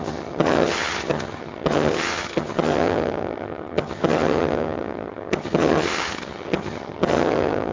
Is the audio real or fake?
fake